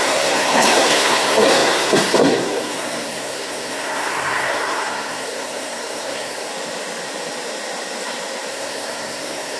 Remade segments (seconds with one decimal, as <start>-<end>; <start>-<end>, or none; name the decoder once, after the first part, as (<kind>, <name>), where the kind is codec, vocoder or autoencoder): 0.0-6.5 (codec, SNAC); 8.5-9.6